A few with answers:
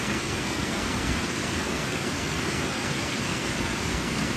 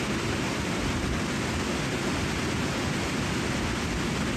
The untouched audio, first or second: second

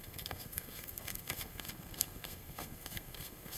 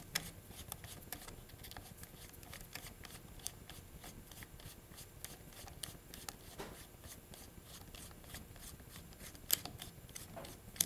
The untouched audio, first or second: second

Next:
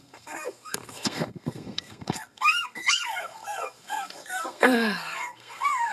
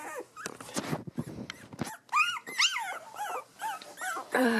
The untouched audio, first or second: second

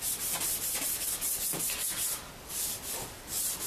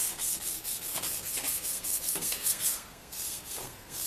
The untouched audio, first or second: first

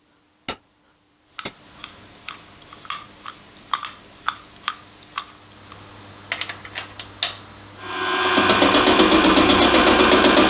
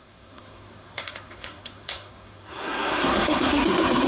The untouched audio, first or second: first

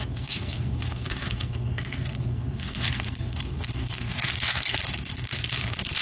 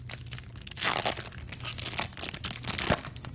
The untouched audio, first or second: second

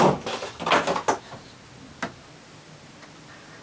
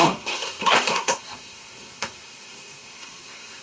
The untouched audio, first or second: first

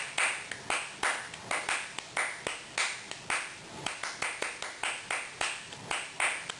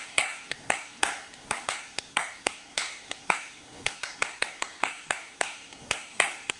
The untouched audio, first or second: first